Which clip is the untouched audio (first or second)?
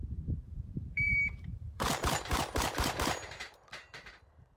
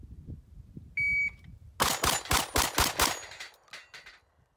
second